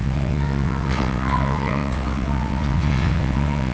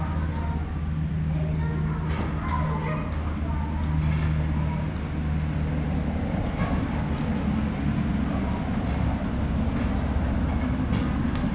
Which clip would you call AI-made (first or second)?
first